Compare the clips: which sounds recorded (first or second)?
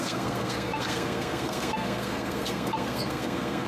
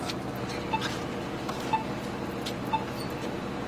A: second